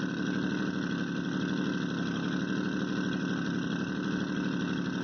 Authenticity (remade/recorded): recorded